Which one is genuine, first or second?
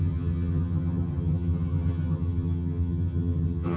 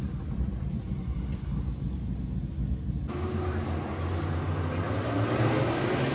second